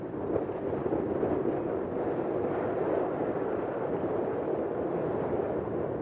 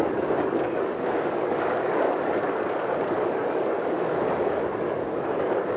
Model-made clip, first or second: second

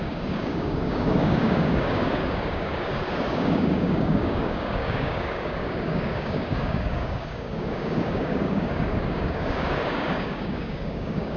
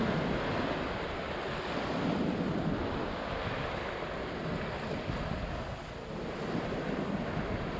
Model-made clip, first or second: first